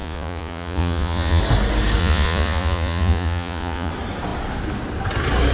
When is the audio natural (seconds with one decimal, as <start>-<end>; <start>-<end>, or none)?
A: 1.4-2.0; 3.9-5.5